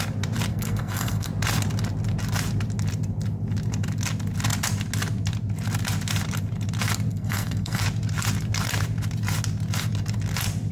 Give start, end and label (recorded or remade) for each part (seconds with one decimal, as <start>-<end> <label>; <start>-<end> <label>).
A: 0.0-0.5 recorded; 0.5-1.3 remade; 1.3-7.1 recorded; 7.1-7.8 remade; 7.8-10.7 recorded